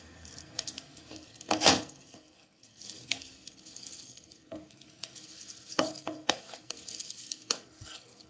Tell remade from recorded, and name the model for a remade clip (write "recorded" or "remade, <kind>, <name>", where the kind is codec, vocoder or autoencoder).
remade, codec, SNAC